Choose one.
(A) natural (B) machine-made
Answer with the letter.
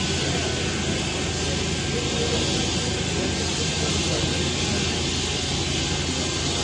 A